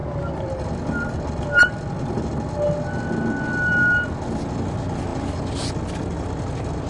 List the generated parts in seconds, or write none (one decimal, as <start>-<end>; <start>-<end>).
none